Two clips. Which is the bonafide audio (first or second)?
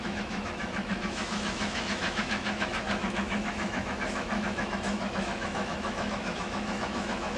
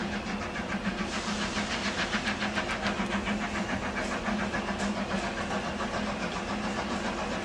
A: second